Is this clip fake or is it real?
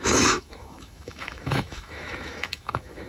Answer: fake